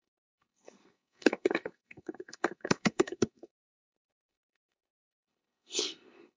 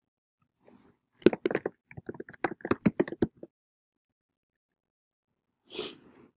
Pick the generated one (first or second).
first